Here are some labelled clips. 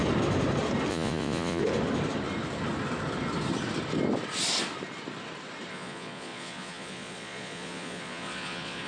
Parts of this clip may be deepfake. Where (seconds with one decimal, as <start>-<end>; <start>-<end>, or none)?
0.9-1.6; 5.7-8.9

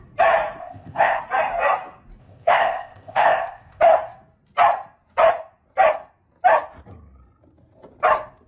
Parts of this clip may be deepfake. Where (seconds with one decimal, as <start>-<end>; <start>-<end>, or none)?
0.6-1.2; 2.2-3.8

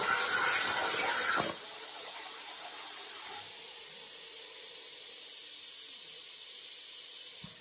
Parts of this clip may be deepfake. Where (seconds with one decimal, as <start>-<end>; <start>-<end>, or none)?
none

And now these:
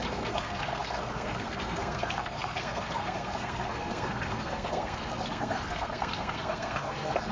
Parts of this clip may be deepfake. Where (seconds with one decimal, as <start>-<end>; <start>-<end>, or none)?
0.0-7.3